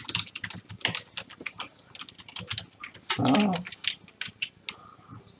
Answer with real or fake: real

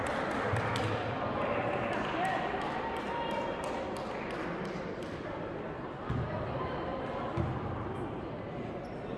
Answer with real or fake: real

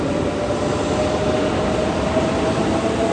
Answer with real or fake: real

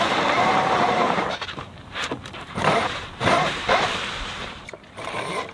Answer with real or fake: fake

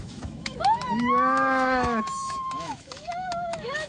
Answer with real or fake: fake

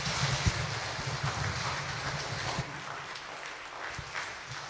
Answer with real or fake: real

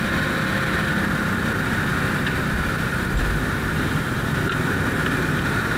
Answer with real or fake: real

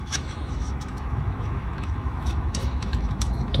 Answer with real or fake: fake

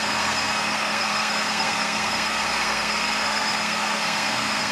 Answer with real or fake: fake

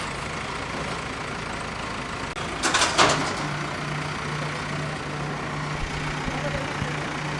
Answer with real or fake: real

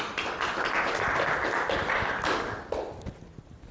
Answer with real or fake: real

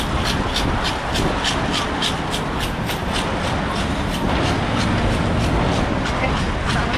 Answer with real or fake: real